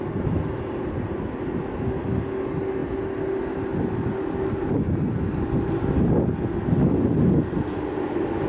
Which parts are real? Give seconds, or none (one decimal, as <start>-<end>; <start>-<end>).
0.0-8.5